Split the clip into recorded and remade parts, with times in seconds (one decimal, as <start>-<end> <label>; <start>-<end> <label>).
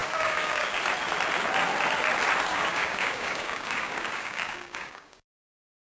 0.0-0.8 remade; 0.8-2.5 recorded; 2.5-6.0 remade